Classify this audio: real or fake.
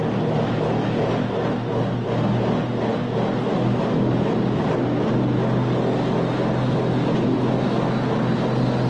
real